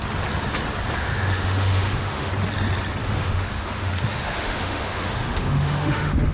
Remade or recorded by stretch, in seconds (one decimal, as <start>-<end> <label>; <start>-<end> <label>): 0.0-1.0 recorded; 1.0-2.3 remade; 2.3-3.0 recorded; 3.0-6.3 remade